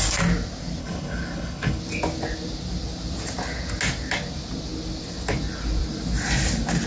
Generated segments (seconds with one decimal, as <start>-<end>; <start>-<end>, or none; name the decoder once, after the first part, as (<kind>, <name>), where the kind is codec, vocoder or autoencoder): 0.8-1.8 (codec, HILCodec)